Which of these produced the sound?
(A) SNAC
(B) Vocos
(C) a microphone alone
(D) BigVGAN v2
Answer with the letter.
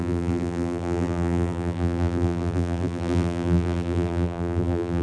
D